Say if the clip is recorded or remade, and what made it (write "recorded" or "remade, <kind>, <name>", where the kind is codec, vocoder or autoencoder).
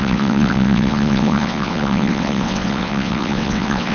remade, vocoder, WaveNeXt